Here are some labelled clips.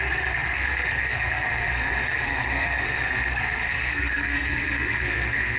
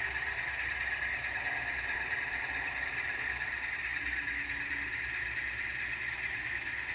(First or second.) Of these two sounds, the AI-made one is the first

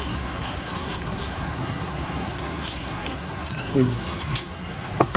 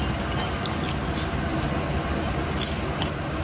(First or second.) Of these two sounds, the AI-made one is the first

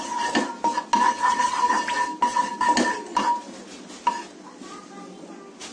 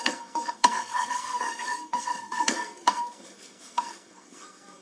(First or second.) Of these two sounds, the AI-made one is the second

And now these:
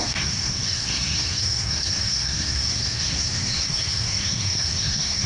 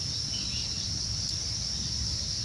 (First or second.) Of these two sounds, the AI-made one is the first